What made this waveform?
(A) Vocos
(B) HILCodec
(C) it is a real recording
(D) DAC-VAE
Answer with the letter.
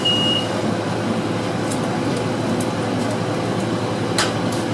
C